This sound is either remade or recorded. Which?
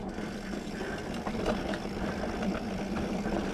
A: recorded